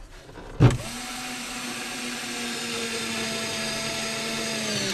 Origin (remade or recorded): recorded